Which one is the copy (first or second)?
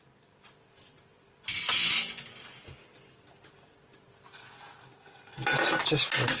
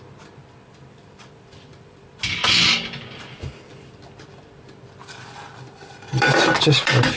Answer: second